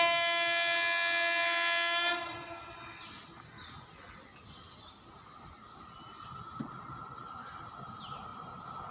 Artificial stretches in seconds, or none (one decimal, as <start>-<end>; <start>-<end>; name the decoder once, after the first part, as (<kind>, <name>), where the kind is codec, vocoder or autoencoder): none